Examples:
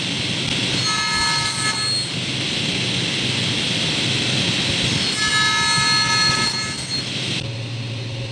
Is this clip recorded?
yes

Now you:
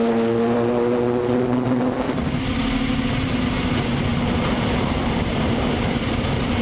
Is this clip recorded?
yes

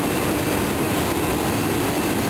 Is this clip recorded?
yes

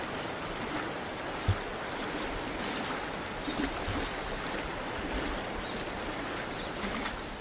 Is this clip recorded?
yes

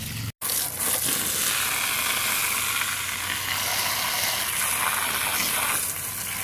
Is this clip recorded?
yes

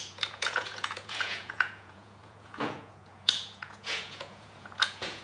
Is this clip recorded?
no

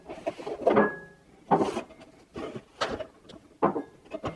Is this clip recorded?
yes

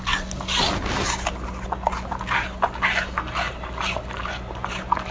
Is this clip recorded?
yes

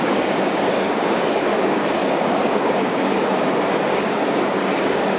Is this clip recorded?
no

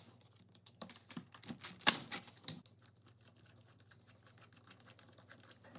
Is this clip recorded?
yes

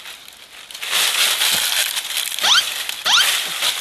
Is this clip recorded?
yes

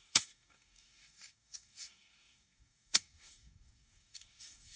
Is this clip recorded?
no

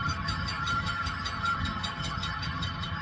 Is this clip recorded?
no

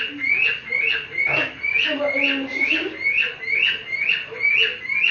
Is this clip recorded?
yes